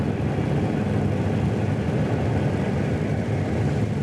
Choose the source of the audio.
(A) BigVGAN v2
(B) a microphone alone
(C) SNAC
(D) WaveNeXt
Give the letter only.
B